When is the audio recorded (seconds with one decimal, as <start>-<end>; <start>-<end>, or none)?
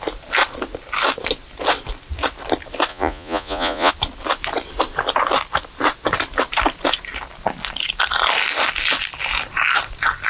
0.0-2.9; 3.9-10.3